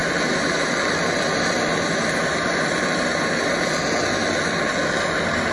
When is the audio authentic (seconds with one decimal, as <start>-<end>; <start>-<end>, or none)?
0.7-1.7; 3.8-5.5